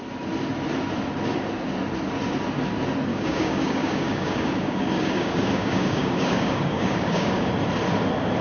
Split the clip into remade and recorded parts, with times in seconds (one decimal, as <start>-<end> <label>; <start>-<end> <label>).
0.0-3.1 recorded; 3.1-7.5 remade; 7.5-8.4 recorded